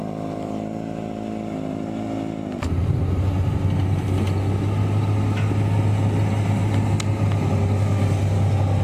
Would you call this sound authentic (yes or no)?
yes